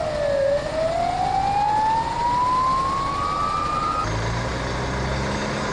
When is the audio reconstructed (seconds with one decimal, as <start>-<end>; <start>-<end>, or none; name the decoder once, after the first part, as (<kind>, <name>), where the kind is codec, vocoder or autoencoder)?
none